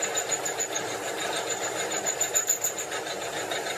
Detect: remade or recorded recorded